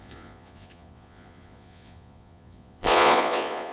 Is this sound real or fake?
fake